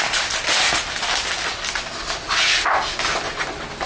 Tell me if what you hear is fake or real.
real